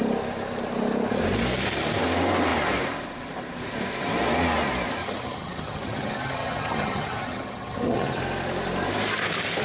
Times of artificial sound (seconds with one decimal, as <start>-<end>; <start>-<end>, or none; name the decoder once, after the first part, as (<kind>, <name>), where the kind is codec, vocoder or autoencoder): 5.0-8.2 (vocoder, HiFi-GAN)